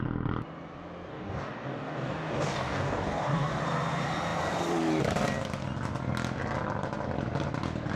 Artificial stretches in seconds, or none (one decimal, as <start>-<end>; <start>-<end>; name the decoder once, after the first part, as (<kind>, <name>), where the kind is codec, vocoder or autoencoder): 1.1-3.6 (codec, DAC)